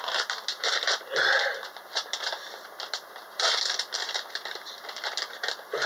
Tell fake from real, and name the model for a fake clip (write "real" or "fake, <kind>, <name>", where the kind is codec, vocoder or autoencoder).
fake, vocoder, BigVGAN v2